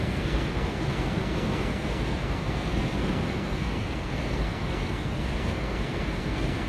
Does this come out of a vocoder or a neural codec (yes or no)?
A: yes